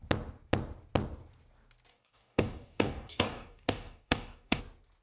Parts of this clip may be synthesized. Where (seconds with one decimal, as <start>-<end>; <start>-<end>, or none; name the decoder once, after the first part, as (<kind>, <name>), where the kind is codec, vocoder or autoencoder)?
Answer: 1.9-4.6 (codec, DAC)